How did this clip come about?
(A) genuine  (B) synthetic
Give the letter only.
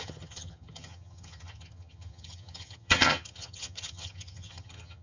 B